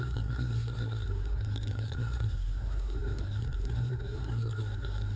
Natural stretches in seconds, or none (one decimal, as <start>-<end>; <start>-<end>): none